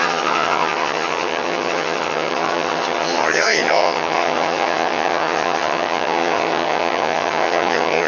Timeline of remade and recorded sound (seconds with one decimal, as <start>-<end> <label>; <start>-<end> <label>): 0.0-8.1 remade